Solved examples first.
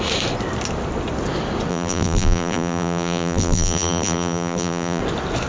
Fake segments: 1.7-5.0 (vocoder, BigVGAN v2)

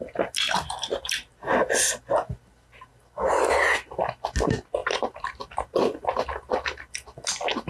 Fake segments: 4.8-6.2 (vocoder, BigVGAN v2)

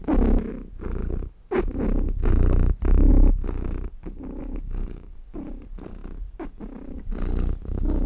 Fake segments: 4.4-5.1 (codec, DAC)